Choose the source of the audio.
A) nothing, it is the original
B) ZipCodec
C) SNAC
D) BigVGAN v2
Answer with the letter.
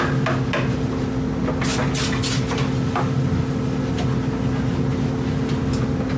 A